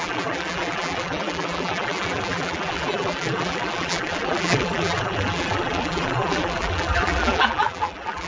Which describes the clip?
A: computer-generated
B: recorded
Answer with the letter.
A